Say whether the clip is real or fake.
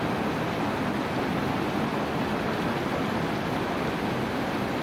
real